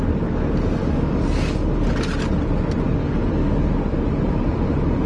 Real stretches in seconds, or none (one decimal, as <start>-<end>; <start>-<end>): 0.0-0.8; 1.9-3.0; 3.7-5.1